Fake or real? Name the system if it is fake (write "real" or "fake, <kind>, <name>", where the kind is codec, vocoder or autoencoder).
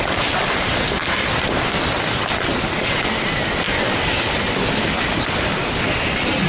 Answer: real